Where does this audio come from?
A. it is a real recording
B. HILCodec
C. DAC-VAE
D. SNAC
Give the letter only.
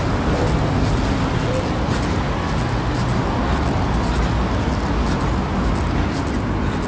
A